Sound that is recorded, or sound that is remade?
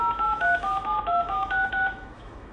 remade